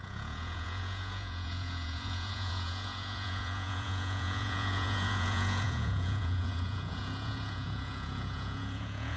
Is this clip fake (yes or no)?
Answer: yes